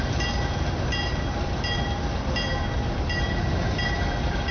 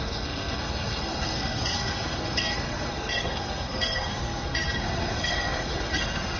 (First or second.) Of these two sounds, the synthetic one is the second